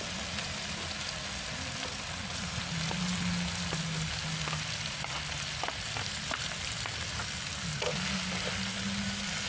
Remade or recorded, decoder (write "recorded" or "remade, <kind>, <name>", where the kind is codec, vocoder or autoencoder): recorded